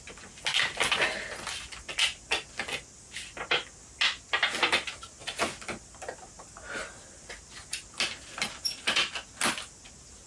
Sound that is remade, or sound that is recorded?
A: recorded